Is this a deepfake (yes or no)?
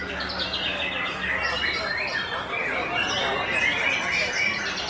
no